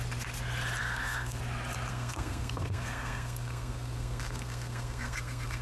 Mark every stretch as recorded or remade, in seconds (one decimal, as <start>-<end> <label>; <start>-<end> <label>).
0.0-0.8 recorded; 0.8-1.4 remade; 1.4-1.9 recorded; 1.9-5.6 remade